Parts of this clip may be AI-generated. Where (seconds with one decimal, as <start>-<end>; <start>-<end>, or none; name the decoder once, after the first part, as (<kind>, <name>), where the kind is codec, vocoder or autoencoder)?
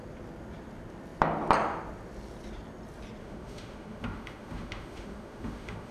3.2-5.9 (autoencoder, DAC-VAE)